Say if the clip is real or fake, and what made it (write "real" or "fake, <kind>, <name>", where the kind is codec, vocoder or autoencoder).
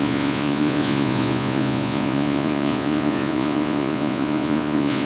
fake, vocoder, Vocos